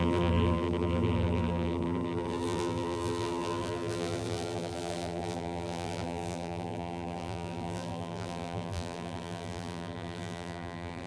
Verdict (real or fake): fake